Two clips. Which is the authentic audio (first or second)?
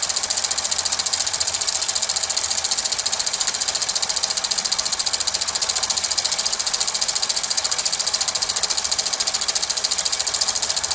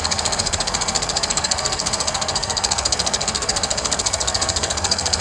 first